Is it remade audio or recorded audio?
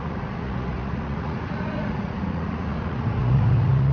remade